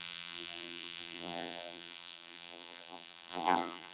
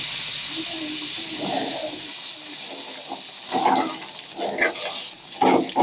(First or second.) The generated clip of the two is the first